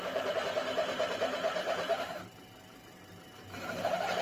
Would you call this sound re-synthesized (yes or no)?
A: yes